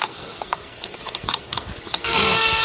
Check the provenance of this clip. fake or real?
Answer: fake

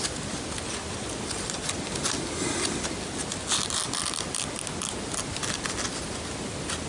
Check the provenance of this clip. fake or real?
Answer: real